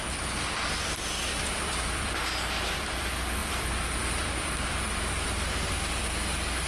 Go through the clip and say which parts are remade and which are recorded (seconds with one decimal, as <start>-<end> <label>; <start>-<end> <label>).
0.0-6.7 remade

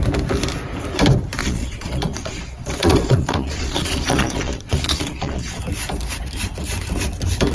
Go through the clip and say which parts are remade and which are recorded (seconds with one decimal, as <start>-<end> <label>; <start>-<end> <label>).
0.0-1.4 recorded; 1.4-5.6 remade; 5.6-7.5 recorded